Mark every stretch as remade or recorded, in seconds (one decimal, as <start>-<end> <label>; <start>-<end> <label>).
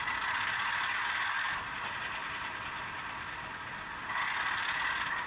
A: 0.0-5.3 recorded